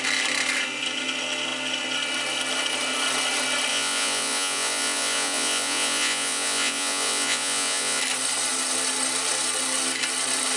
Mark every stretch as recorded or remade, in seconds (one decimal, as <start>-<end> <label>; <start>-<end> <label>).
0.0-3.7 recorded; 3.7-8.0 remade; 8.0-10.6 recorded